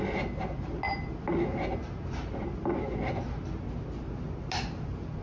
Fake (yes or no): no